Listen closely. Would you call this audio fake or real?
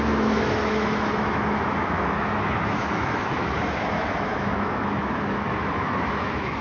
fake